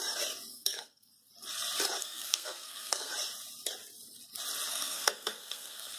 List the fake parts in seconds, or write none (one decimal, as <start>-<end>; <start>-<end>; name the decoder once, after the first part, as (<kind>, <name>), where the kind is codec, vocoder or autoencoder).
0.5-1.1 (codec, SNAC); 2.0-3.1; 4.7-6.0